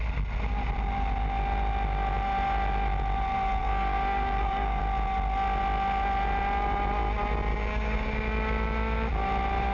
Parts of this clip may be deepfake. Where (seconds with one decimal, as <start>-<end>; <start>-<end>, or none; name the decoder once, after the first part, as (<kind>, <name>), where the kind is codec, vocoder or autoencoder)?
3.6-4.8 (codec, DAC); 7.5-8.1